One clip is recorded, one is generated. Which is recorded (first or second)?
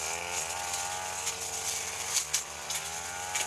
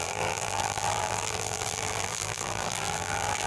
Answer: first